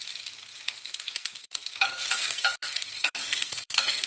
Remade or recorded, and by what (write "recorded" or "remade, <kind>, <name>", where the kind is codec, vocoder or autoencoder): remade, codec, SNAC